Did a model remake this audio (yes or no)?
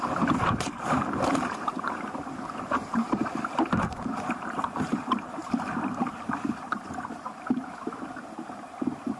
yes